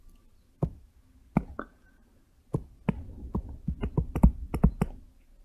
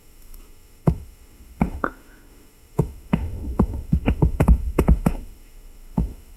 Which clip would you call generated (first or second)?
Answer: second